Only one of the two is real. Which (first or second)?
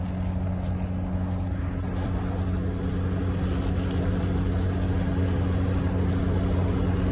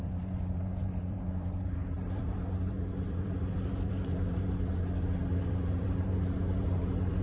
first